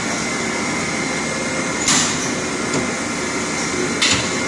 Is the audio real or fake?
real